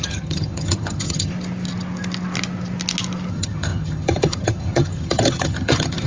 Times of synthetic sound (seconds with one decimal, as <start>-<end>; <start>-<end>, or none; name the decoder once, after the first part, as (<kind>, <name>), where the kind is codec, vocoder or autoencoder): 0.0-1.3 (vocoder, HiFi-GAN); 3.3-6.1